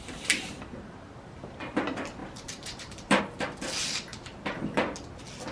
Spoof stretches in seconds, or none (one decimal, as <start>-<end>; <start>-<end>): 2.2-3.2; 4.1-4.7